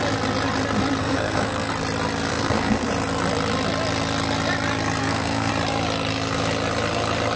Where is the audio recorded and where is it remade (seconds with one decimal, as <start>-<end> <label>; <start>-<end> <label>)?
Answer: 0.0-1.0 recorded; 1.0-1.7 remade; 1.7-2.3 recorded; 2.3-2.9 remade; 2.9-5.0 recorded; 5.0-5.5 remade; 5.5-7.4 recorded